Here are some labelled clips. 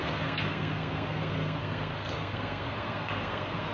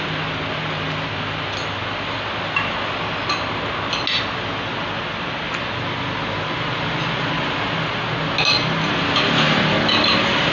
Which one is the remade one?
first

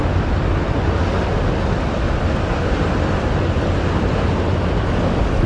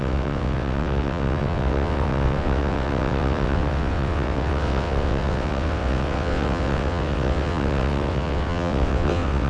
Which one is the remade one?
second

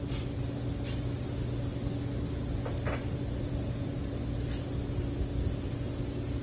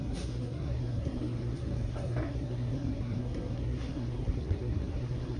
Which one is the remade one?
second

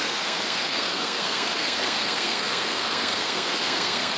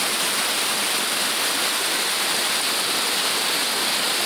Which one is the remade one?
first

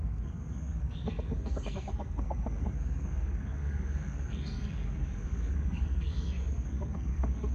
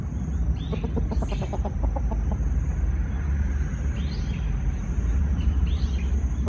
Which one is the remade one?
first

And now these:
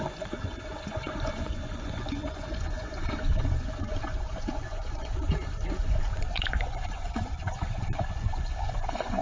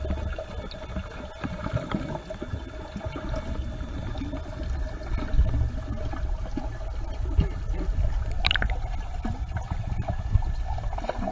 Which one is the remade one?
first